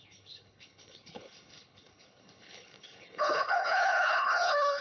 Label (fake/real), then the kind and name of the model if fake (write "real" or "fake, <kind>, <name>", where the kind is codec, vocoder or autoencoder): fake, codec, HILCodec